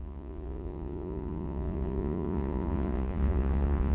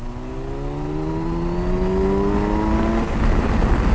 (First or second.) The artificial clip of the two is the first